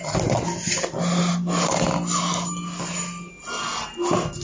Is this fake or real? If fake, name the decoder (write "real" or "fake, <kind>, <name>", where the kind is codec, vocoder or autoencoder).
real